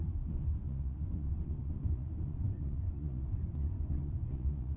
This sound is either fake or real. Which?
fake